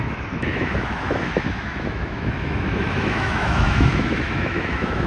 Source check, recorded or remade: remade